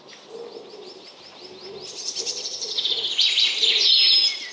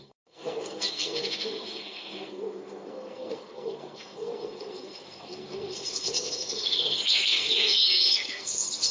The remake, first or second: second